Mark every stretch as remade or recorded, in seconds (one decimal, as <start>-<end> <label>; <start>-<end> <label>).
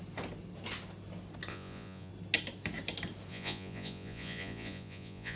0.0-1.5 recorded; 1.5-2.1 remade; 2.1-3.3 recorded; 3.3-5.4 remade